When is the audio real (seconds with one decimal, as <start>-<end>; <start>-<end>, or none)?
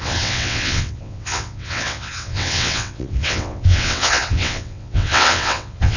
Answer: none